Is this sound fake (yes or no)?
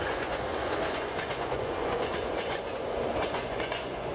yes